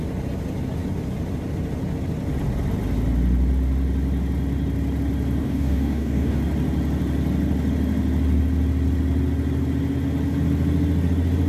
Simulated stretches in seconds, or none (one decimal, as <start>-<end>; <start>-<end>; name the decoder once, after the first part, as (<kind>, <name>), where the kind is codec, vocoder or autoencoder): 5.4-6.4 (codec, DAC)

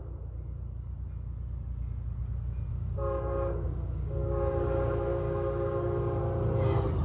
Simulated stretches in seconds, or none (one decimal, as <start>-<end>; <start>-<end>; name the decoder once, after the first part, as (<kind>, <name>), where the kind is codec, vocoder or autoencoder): 2.7-6.2 (codec, DAC)

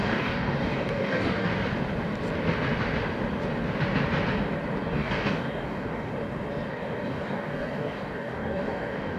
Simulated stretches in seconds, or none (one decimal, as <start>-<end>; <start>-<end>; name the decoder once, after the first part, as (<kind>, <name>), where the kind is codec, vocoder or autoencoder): 0.0-1.5 (codec, DAC); 4.8-6.1; 6.7-9.2

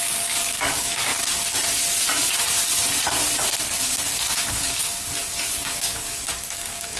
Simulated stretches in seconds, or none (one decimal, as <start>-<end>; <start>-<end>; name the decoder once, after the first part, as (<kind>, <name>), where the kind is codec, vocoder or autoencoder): 0.0-1.1 (codec, DAC); 3.8-7.0

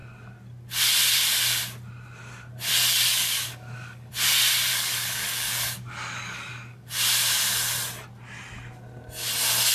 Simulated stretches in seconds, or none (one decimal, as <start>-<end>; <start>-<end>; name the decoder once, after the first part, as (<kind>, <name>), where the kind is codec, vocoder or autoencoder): 3.1-4.1 (codec, DAC); 4.7-7.0